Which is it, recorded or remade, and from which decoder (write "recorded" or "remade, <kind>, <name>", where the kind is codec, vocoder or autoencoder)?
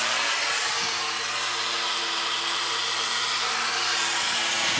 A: recorded